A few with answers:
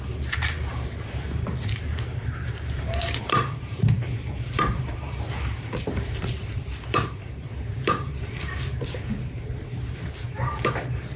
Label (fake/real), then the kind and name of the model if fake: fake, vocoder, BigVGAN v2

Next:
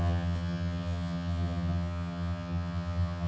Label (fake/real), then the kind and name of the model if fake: fake, vocoder, HiFi-GAN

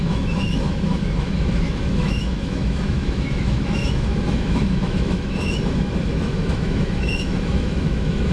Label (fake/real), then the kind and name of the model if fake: fake, autoencoder, DAC-VAE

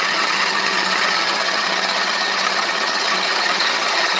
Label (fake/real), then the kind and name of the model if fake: fake, vocoder, HiFi-GAN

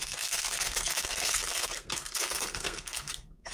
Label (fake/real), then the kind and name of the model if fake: fake, codec, SNAC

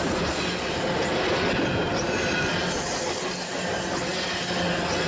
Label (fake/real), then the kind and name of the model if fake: real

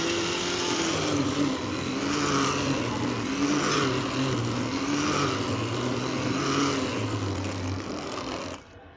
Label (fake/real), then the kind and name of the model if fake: real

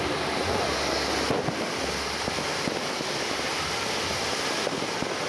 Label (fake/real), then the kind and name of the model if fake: real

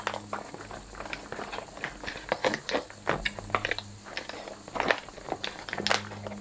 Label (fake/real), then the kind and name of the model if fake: real